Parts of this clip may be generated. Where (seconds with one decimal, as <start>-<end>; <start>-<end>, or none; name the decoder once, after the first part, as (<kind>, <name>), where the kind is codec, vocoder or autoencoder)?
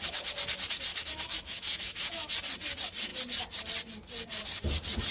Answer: 0.9-2.3 (autoencoder, DAC-VAE)